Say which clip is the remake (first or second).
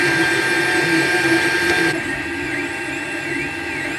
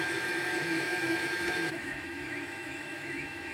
second